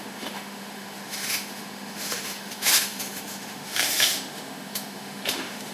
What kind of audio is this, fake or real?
fake